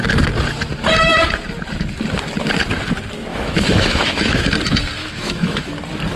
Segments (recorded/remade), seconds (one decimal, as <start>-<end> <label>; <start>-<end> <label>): 0.0-3.3 recorded; 3.3-4.5 remade; 4.5-5.0 recorded; 5.0-5.7 remade; 5.7-6.2 recorded

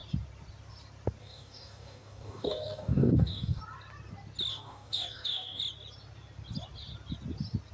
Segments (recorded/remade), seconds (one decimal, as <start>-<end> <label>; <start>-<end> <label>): 0.0-1.2 recorded; 1.2-3.6 remade; 3.6-4.5 recorded; 4.5-5.6 remade; 5.6-7.7 recorded

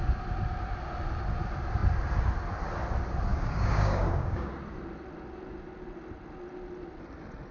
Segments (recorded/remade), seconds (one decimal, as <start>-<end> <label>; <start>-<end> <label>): 0.0-3.3 recorded; 3.3-4.5 remade; 4.5-7.5 recorded